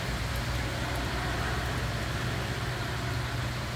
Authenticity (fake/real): real